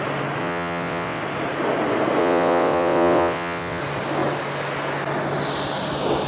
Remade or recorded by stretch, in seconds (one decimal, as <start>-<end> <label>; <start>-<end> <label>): 0.0-0.4 recorded; 0.4-1.2 remade; 1.2-2.2 recorded; 2.2-3.8 remade; 3.8-6.3 recorded